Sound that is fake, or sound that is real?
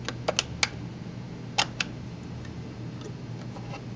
real